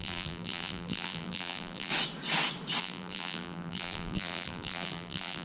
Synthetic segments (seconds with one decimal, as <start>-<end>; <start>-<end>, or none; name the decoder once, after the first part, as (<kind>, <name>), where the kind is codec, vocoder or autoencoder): 0.0-1.9 (vocoder, BigVGAN v2); 2.8-5.4